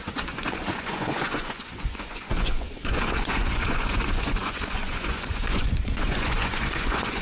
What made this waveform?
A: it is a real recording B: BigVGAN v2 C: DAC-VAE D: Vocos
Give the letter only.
D